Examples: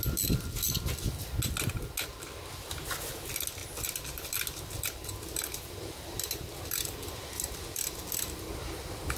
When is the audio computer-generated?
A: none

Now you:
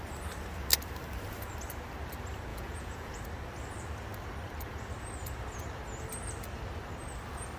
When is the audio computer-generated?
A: 2.5-3.2 (vocoder, Vocos)